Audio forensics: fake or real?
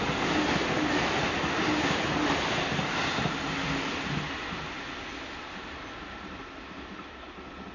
real